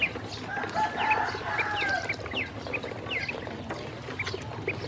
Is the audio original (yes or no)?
yes